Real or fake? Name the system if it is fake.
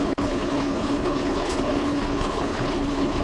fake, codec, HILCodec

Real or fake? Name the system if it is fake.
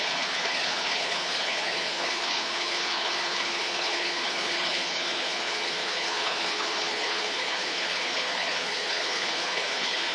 fake, codec, HILCodec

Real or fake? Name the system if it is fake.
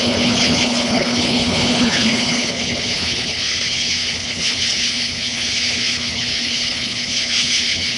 fake, codec, HILCodec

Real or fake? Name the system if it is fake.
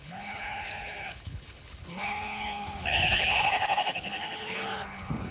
fake, codec, HILCodec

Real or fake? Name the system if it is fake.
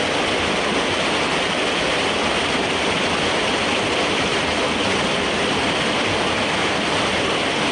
real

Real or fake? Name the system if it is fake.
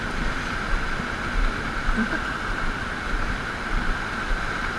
real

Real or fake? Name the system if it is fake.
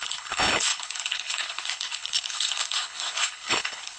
fake, codec, HILCodec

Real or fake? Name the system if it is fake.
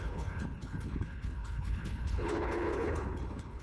fake, codec, HILCodec